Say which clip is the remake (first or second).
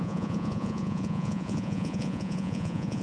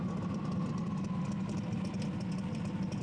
first